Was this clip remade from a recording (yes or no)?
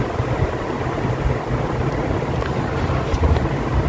no